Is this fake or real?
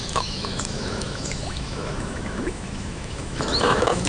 fake